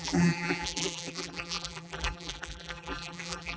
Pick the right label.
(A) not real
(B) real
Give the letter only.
A